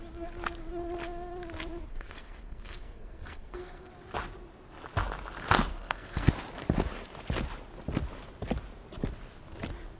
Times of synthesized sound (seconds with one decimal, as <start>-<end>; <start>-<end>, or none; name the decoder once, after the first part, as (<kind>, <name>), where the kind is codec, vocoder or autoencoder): 1.9-3.9 (codec, SNAC); 5.7-6.3